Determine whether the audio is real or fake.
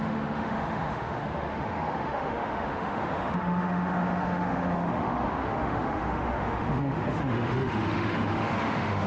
fake